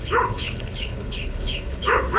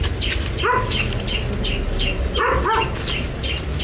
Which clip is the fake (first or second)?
first